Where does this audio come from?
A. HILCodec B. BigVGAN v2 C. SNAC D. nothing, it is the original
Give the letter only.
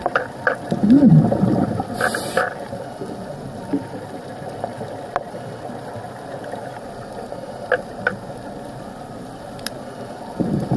D